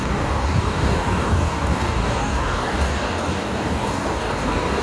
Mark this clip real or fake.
fake